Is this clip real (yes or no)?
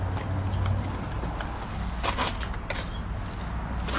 yes